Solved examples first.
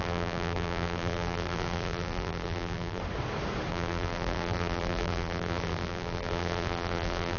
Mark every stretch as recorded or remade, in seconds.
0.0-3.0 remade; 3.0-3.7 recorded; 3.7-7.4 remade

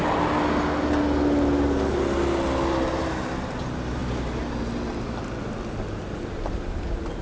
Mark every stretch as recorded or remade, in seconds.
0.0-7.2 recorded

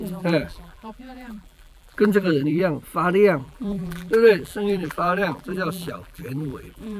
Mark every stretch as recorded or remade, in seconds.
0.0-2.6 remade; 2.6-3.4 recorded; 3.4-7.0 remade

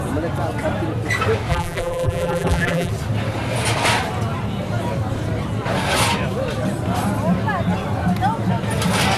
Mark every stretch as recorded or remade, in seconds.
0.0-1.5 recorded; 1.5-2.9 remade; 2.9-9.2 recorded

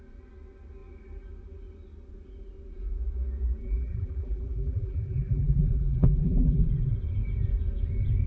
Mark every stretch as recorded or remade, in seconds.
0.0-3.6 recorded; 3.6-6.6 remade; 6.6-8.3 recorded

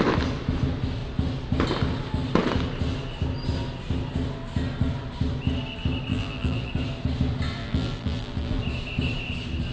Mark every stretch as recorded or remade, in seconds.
0.0-6.1 recorded; 6.1-6.7 remade; 6.7-7.6 recorded; 7.6-8.6 remade; 8.6-9.7 recorded

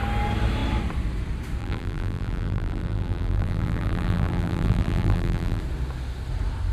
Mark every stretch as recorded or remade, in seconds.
0.0-1.6 recorded; 1.6-5.6 remade; 5.6-6.7 recorded

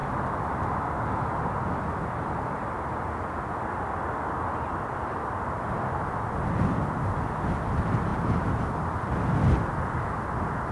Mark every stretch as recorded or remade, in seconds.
0.0-8.1 recorded; 8.1-9.1 remade; 9.1-10.7 recorded